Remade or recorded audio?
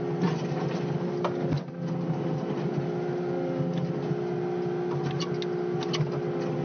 recorded